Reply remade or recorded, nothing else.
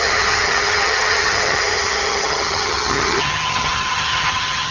remade